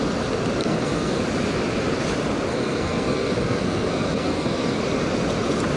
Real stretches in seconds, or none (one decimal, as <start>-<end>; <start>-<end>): 0.0-0.6; 1.2-2.5; 4.8-5.8